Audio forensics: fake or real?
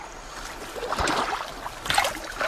real